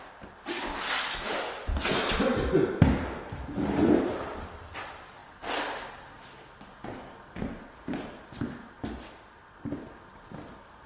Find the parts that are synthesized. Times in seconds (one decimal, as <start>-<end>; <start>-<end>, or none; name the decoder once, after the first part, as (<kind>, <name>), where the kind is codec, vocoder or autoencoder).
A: none